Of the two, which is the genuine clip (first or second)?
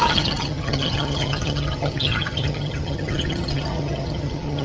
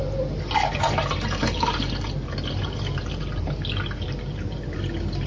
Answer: second